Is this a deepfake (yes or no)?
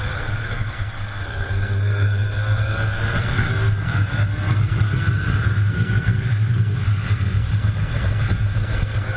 yes